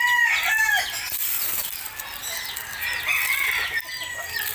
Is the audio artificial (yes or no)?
no